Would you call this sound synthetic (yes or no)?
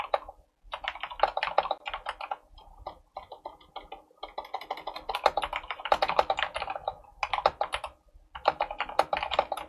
no